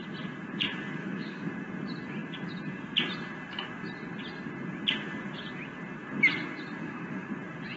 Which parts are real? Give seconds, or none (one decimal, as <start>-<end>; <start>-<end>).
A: 0.0-1.0; 1.5-6.8; 7.3-7.8